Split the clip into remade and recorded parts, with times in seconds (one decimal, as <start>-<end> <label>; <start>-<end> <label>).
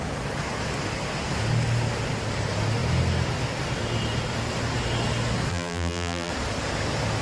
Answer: 0.0-5.5 recorded; 5.5-6.3 remade; 6.3-7.2 recorded